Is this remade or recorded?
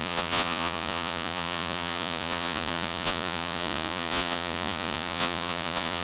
remade